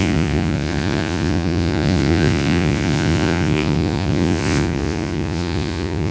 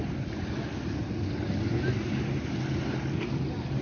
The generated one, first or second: first